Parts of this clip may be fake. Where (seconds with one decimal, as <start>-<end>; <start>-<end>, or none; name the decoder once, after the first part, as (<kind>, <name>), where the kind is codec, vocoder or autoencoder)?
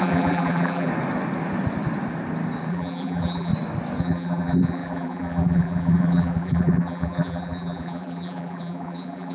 0.0-0.9 (vocoder, BigVGAN v2); 2.7-3.5; 4.0-9.3